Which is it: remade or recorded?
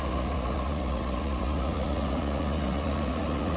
remade